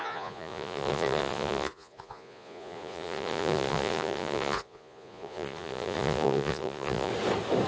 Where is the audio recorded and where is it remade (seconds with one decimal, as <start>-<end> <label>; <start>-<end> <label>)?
0.0-7.1 remade; 7.1-7.7 recorded